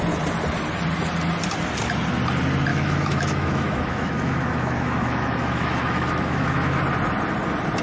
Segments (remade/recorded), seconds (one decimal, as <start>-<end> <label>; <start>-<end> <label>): 0.0-2.7 recorded; 2.7-6.8 remade; 6.8-7.8 recorded